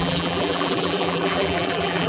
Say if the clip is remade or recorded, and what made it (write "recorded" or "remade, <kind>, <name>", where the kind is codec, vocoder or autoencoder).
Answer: remade, vocoder, BigVGAN v2